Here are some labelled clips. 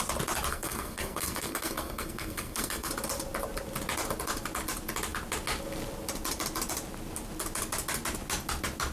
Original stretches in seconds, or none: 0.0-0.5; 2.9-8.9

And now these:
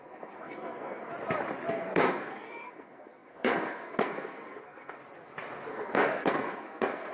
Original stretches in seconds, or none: 1.1-1.7; 5.0-5.7